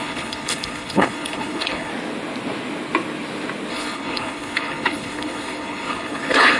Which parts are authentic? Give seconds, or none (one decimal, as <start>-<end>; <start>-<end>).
1.9-3.7